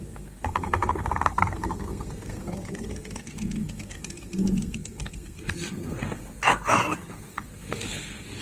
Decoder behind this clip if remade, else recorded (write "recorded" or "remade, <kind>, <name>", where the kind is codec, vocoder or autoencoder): remade, codec, SNAC